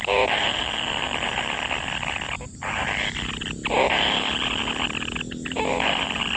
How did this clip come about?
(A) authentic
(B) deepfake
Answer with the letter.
A